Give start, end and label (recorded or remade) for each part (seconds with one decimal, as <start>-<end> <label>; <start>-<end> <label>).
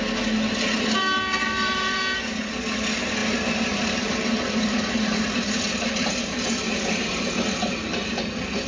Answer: 0.0-1.4 recorded; 1.4-2.0 remade; 2.0-3.2 recorded; 3.2-8.2 remade; 8.2-8.7 recorded